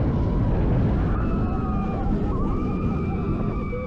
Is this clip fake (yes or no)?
no